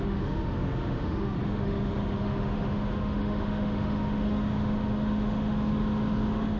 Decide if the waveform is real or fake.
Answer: fake